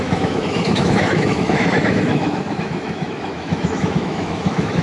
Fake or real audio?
fake